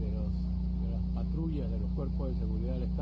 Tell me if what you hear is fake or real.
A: real